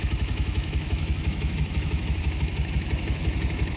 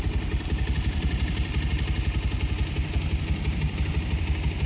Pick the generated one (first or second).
first